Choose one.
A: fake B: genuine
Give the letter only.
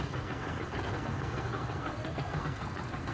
A